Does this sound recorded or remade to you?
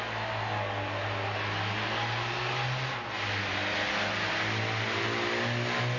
recorded